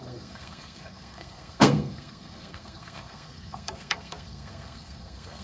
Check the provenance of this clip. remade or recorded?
remade